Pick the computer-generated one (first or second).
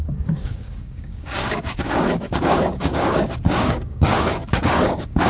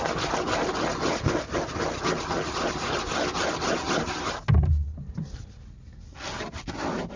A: first